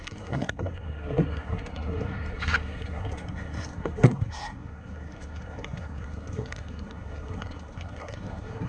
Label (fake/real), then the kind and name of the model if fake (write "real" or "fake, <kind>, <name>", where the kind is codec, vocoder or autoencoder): fake, codec, SNAC